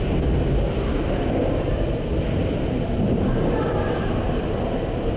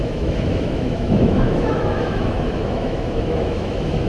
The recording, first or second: first